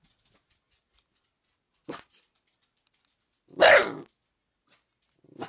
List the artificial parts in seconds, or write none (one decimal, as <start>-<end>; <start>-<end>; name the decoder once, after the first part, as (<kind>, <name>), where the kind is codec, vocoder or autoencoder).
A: none